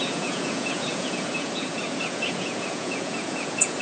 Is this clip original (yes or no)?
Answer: no